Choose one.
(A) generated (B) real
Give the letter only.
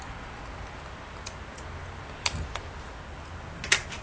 B